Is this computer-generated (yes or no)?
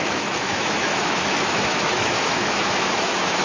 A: yes